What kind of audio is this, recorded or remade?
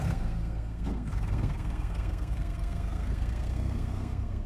remade